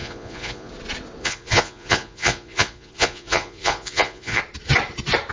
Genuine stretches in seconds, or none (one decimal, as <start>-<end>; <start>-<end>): 0.7-1.2; 4.4-5.3